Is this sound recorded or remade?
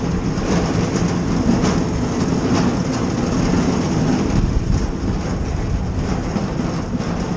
recorded